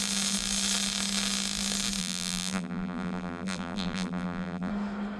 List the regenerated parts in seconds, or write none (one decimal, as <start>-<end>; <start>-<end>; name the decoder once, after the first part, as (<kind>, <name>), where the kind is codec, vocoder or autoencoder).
2.0-4.7 (vocoder, BigVGAN v2)